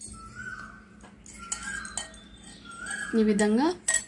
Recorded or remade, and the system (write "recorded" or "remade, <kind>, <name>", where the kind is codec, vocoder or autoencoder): recorded